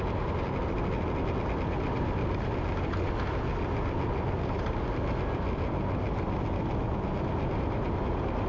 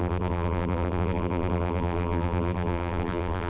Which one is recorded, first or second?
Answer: first